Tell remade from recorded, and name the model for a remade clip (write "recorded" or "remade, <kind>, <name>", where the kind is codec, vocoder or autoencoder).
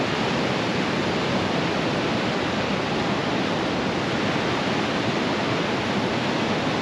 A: remade, vocoder, BigVGAN v2